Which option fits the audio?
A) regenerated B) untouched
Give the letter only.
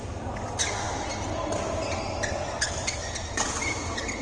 B